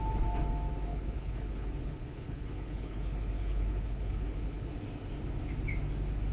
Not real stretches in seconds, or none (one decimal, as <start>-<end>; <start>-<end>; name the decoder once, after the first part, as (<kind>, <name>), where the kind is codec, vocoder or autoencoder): 0.9-4.7 (codec, HILCodec)